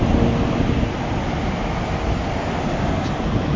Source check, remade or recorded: recorded